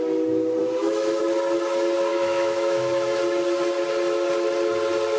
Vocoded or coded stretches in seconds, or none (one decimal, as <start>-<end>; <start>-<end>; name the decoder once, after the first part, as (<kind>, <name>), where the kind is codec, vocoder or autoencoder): 0.6-1.2 (autoencoder, DAC-VAE); 2.1-3.2